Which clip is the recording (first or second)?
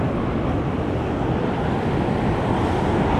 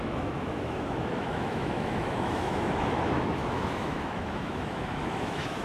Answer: first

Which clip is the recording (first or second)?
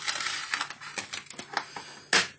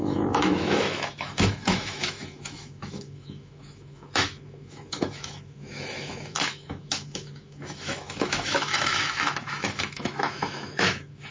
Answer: first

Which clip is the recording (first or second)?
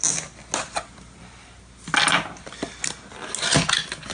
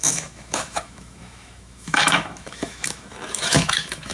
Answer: first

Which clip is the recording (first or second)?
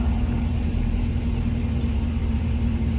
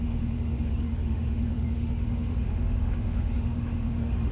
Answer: first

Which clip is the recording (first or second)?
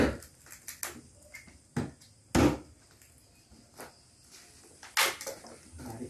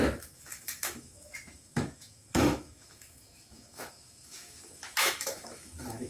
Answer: first